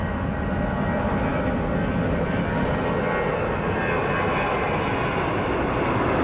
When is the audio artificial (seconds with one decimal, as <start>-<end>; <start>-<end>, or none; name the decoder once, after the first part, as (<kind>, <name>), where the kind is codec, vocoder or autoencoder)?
none